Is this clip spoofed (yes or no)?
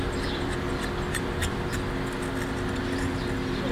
no